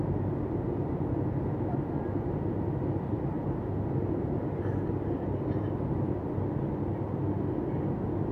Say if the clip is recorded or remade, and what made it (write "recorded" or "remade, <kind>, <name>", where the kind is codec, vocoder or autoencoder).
recorded